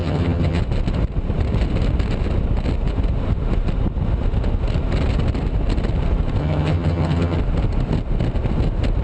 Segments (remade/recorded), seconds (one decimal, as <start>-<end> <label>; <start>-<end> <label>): 0.0-0.6 remade; 0.6-6.4 recorded; 6.4-7.4 remade; 7.4-9.0 recorded